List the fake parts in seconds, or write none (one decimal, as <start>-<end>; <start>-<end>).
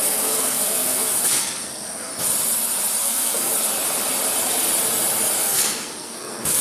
0.0-2.1; 3.0-3.5; 5.4-6.6